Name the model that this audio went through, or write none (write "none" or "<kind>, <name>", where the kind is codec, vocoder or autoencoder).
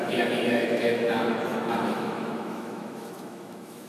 autoencoder, DAC-VAE